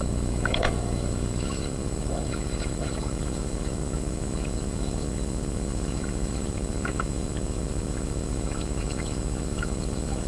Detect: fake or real fake